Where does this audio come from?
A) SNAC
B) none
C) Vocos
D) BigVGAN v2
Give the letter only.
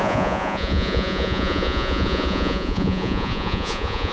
C